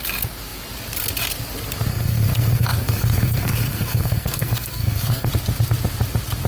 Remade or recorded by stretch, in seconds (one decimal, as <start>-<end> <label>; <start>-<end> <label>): 0.0-1.9 recorded; 1.9-5.3 remade; 5.3-6.5 recorded